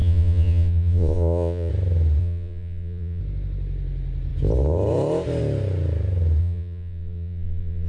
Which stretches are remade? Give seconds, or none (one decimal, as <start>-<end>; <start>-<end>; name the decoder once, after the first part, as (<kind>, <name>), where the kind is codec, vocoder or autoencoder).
0.0-1.7 (vocoder, Vocos); 2.2-3.2; 6.4-7.9